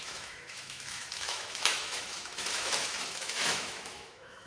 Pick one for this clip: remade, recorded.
remade